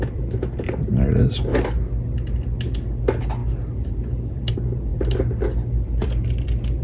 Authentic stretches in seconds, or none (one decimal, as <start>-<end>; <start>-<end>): 0.0-6.8